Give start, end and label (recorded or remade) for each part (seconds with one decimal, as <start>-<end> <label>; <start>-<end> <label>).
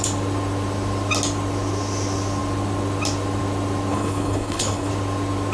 0.0-3.9 recorded; 3.9-4.9 remade; 4.9-5.5 recorded